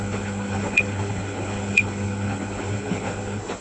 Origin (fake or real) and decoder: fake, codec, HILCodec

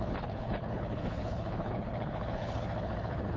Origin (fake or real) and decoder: fake, codec, HILCodec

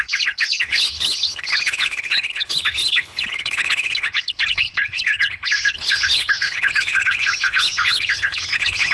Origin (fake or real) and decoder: fake, codec, HILCodec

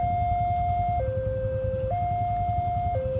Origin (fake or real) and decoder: real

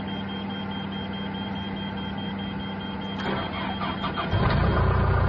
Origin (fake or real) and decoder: real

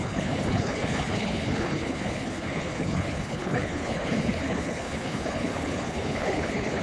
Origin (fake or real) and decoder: fake, codec, HILCodec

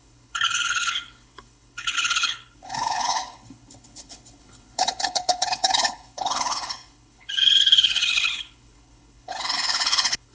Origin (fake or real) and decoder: fake, codec, HILCodec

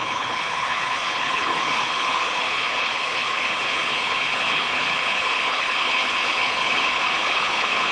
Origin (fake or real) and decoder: fake, codec, HILCodec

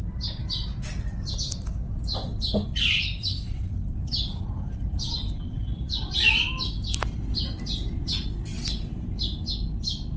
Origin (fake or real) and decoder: real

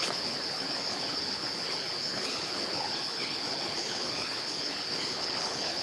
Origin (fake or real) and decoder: fake, codec, HILCodec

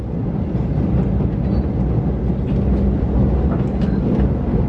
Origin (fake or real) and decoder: real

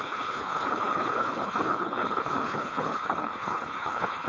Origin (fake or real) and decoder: fake, codec, HILCodec